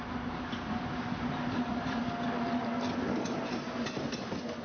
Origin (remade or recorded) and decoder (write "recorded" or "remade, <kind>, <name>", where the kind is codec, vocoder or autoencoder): recorded